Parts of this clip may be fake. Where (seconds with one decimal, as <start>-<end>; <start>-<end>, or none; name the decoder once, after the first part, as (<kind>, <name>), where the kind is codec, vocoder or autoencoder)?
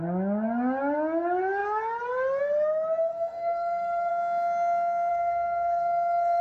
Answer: 3.1-4.1 (codec, SNAC); 5.1-6.4